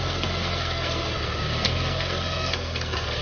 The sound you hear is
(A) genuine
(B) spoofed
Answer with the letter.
B